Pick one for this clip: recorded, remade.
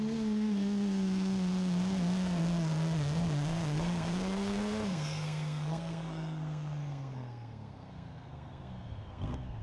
remade